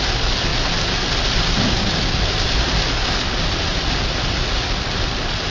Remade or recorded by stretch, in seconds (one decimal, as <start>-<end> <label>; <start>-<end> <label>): 0.0-5.5 recorded